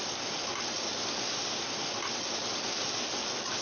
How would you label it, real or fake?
fake